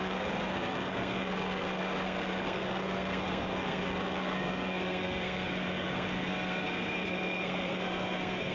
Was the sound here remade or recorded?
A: remade